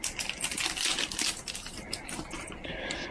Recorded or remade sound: recorded